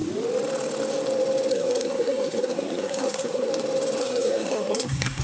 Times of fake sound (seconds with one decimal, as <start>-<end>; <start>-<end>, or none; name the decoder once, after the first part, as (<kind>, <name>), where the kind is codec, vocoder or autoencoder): 1.5-3.5 (codec, SNAC); 4.0-5.2